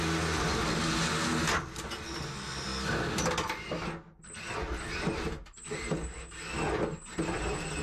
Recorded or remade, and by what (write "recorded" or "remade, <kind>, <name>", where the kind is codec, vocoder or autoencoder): recorded